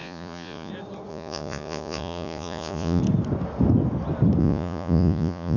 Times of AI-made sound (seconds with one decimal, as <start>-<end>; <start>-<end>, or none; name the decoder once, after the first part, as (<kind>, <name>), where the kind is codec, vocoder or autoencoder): 0.0-0.7 (vocoder, Vocos); 1.1-3.0; 4.4-5.6